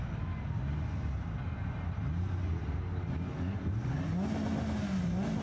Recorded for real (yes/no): yes